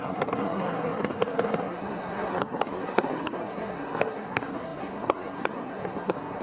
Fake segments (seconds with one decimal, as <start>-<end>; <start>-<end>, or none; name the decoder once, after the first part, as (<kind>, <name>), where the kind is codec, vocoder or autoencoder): 0.0-6.4 (codec, SNAC)